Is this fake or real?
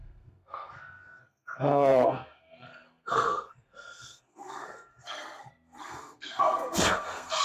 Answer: fake